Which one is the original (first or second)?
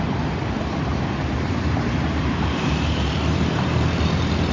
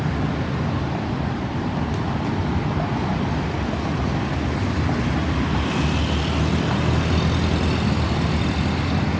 second